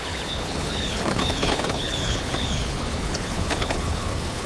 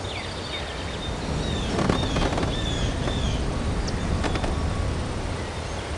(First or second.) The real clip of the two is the second